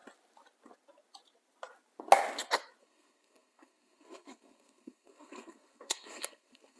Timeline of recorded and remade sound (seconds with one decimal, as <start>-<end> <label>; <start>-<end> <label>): 0.0-2.8 recorded; 2.8-6.8 remade